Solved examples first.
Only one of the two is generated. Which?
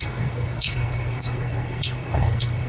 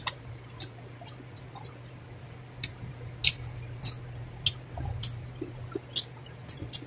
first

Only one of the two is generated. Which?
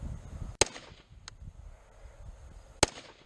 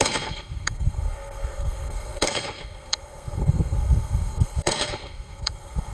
second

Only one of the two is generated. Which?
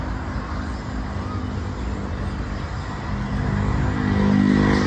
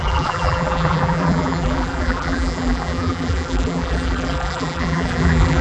second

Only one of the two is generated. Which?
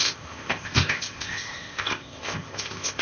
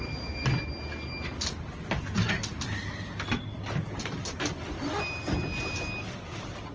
first